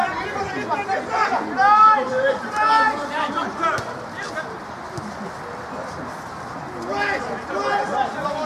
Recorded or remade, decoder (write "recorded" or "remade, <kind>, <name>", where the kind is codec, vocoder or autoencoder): recorded